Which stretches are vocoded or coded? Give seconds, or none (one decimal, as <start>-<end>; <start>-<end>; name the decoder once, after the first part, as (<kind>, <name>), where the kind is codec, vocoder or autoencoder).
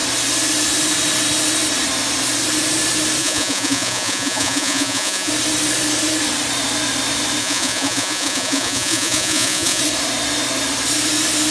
3.2-5.3 (vocoder, Vocos); 7.4-9.8